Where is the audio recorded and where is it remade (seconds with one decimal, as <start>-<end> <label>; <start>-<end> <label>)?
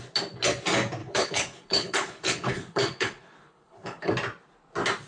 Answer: 0.0-1.0 recorded; 1.0-4.1 remade; 4.1-5.1 recorded